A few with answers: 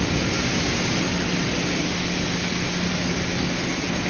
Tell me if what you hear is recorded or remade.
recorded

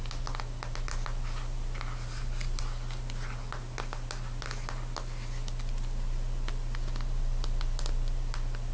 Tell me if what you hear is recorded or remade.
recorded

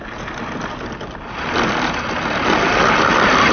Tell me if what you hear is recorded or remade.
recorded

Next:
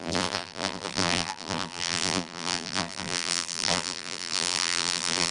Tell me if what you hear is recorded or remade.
remade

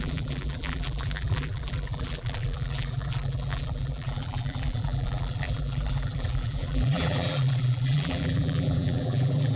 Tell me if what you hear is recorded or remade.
remade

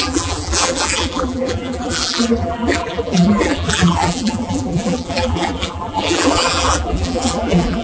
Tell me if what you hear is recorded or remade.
remade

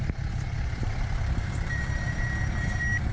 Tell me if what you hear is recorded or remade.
remade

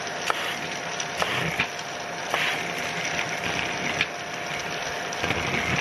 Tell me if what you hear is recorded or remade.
recorded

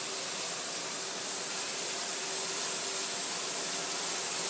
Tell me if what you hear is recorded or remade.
recorded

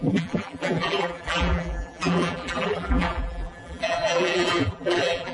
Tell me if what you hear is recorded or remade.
remade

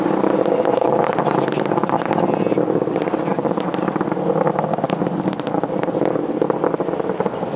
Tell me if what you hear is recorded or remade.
recorded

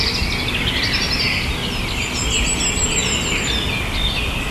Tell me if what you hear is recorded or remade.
recorded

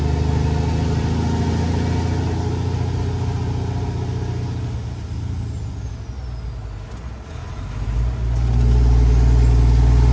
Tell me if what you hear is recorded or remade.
recorded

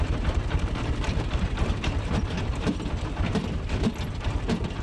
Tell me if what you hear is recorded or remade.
remade